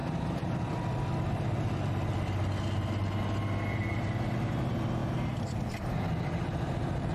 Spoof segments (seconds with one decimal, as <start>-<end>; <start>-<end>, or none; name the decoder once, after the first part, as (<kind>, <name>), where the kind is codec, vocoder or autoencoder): 0.0-0.7 (vocoder, BigVGAN v2); 5.0-5.7